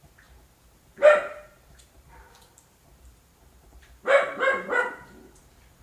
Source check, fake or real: fake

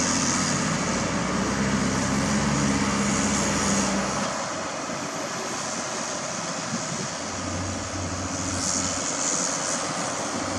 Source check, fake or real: real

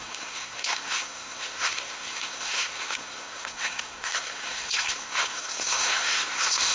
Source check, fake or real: fake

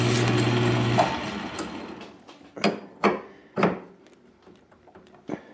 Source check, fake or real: real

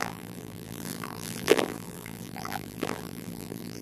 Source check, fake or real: fake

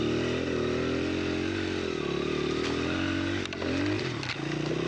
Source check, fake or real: real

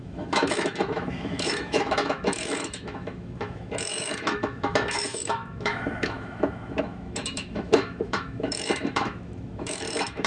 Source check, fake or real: fake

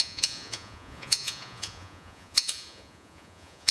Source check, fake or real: fake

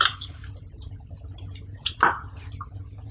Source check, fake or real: fake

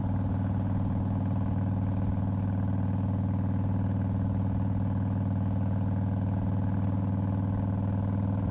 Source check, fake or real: real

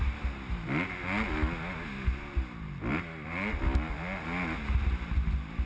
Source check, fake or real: real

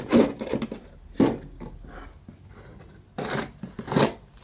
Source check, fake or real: real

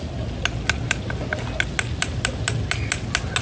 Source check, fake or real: real